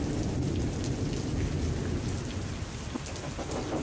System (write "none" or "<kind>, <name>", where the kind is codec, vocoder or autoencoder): none